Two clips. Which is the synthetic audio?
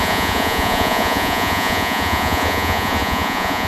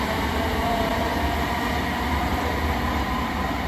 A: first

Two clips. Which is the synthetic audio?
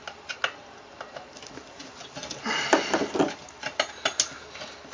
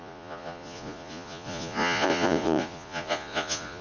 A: second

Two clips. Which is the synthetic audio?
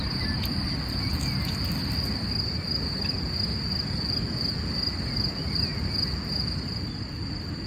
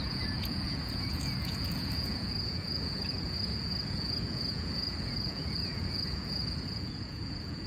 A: second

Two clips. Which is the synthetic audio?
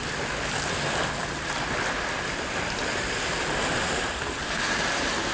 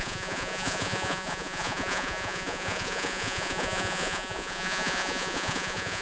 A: second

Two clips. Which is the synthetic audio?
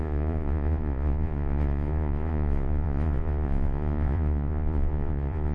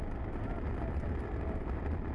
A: first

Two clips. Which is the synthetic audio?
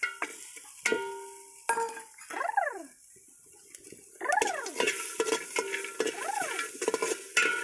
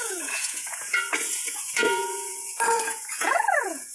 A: second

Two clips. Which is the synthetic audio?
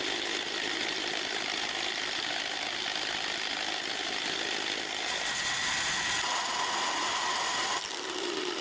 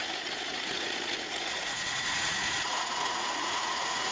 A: second